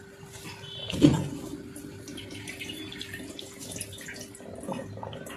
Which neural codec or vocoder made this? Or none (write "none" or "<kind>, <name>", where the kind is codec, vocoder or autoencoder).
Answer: vocoder, BigVGAN v2